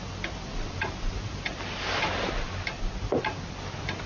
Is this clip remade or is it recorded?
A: recorded